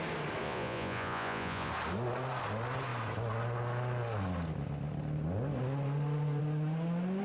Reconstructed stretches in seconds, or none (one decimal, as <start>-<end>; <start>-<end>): 0.4-1.7